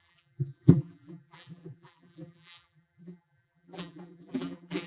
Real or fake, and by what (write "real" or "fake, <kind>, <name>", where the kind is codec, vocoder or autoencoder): fake, vocoder, BigVGAN v2